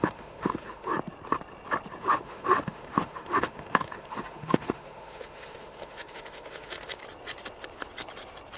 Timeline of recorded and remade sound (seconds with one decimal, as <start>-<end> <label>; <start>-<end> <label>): 0.0-0.9 remade; 0.9-2.0 recorded; 2.0-7.0 remade; 7.0-8.6 recorded